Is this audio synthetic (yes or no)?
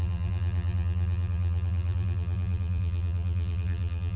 yes